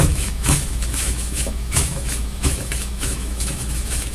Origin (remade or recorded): remade